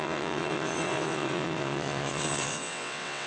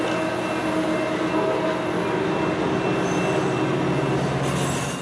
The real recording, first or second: second